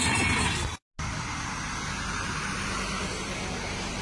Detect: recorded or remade recorded